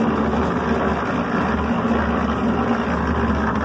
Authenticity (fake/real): real